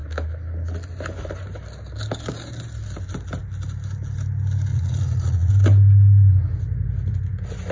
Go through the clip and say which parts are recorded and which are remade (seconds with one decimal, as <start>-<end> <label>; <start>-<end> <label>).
0.0-4.7 recorded; 4.7-5.5 remade; 5.5-7.7 recorded